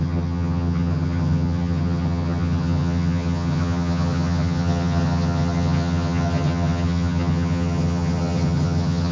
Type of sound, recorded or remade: remade